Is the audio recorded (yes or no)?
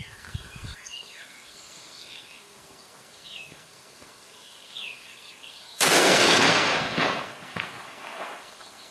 no